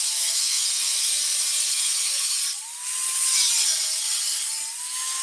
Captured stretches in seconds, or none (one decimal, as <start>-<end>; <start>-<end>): 1.1-1.7; 2.4-4.8